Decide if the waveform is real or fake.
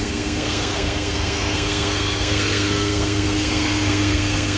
fake